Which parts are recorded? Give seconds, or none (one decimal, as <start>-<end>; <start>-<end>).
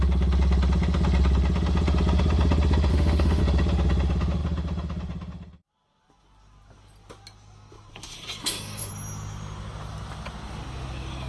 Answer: 0.0-2.9; 3.4-8.4; 8.9-11.3